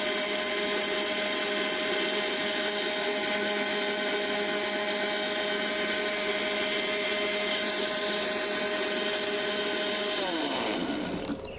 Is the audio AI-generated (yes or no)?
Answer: no